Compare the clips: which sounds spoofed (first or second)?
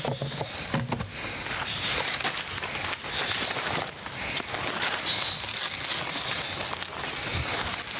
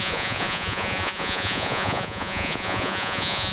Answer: second